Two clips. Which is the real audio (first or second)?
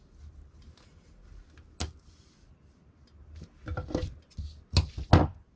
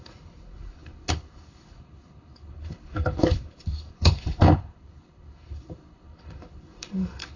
first